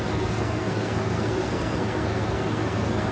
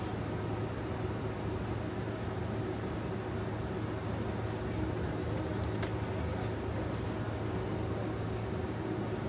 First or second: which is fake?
first